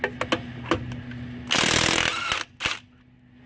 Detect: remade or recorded recorded